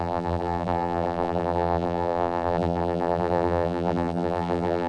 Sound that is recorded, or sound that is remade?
remade